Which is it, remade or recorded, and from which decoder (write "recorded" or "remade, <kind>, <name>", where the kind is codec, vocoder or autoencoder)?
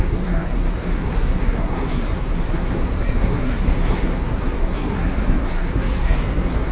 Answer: remade, codec, SNAC